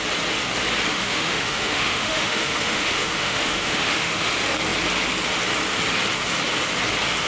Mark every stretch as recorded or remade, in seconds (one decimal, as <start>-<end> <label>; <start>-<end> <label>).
0.0-0.9 recorded; 0.9-4.3 remade; 4.3-7.3 recorded